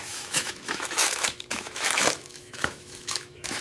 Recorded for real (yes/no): no